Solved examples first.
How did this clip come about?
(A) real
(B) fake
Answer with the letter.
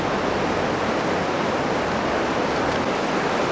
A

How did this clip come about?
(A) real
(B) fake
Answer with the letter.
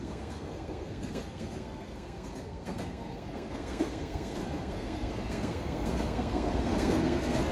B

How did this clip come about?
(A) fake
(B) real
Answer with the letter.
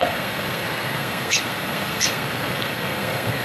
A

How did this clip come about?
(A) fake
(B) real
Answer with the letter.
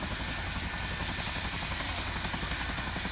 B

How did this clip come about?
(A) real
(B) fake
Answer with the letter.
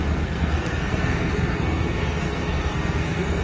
B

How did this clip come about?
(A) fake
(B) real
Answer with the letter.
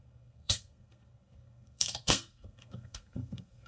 A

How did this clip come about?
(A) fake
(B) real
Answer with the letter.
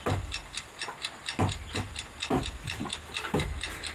B